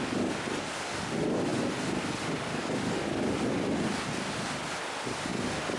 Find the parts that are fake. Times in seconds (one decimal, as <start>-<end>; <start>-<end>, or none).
none